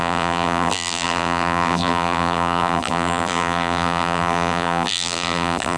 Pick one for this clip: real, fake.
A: fake